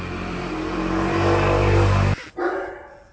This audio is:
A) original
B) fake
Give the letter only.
A